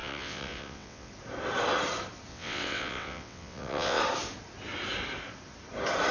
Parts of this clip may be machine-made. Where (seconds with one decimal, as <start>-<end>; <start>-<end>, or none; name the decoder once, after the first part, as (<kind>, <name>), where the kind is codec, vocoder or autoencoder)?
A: 0.0-1.1 (vocoder, WaveNeXt); 2.3-4.0